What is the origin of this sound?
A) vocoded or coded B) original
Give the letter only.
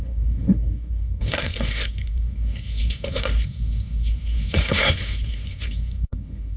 A